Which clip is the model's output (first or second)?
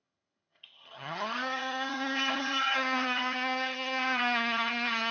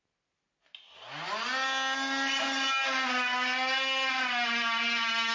first